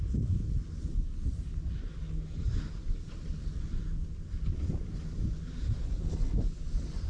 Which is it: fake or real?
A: real